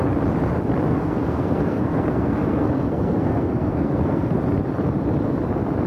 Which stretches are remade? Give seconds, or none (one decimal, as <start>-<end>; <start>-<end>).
0.9-4.4